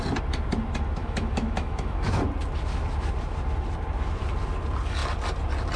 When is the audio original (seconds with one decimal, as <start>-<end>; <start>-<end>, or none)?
0.0-1.0; 2.2-5.8